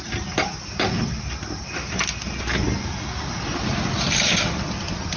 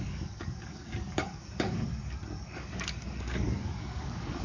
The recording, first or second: first